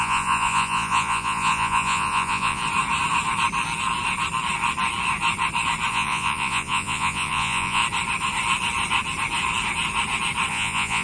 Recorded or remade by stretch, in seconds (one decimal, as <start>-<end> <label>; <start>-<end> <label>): 0.0-2.6 remade; 2.6-5.9 recorded; 5.9-7.8 remade; 7.8-10.5 recorded; 10.5-11.0 remade